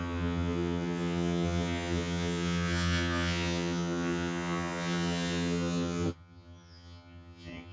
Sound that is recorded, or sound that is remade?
remade